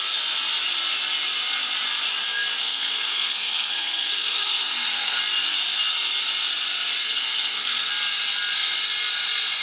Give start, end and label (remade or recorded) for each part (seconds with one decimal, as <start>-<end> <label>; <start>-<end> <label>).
0.0-2.6 recorded; 2.6-5.2 remade; 5.2-7.0 recorded; 7.0-7.9 remade; 7.9-9.6 recorded